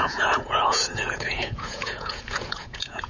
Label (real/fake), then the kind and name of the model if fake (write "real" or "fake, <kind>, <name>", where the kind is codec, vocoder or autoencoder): fake, vocoder, Vocos